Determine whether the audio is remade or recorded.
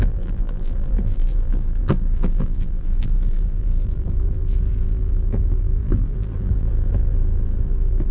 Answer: remade